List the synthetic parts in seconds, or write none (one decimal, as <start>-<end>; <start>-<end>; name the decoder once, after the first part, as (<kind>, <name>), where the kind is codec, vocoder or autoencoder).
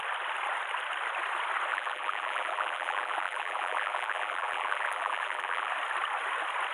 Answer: 1.7-5.7 (vocoder, BigVGAN v2)